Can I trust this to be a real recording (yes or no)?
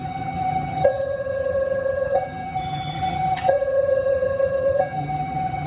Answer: no